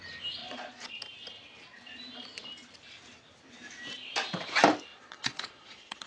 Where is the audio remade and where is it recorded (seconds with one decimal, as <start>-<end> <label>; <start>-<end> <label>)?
0.0-0.4 recorded; 0.4-1.0 remade; 1.0-4.9 recorded; 4.9-6.1 remade